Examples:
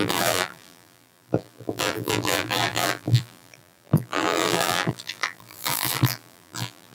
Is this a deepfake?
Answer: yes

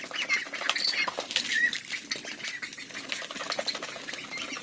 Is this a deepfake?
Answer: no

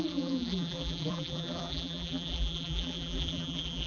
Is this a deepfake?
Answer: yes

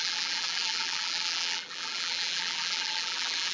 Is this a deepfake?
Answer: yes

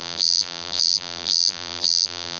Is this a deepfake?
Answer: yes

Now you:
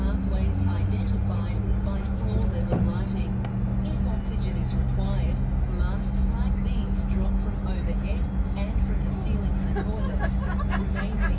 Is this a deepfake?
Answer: no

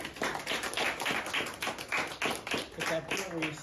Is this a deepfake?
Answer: no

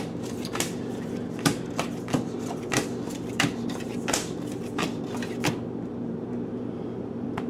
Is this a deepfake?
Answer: yes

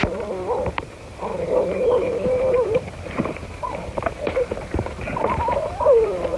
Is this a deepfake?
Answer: yes